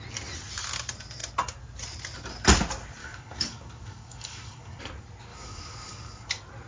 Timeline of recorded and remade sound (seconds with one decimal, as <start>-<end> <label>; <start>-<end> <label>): 0.0-3.0 recorded; 3.0-4.8 remade; 4.8-5.3 recorded; 5.3-6.3 remade; 6.3-6.7 recorded